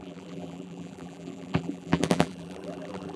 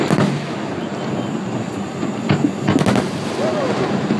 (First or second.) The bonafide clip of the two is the second